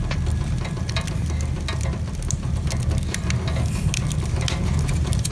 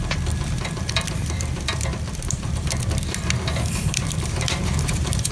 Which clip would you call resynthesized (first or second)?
second